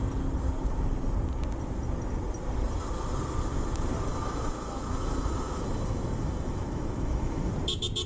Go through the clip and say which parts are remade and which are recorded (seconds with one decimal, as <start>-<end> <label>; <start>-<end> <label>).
0.0-4.1 recorded; 4.1-7.5 remade; 7.5-8.1 recorded